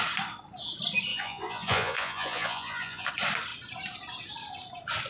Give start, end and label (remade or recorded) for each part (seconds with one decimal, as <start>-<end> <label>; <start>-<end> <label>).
0.0-1.1 recorded; 1.1-3.1 remade; 3.1-5.1 recorded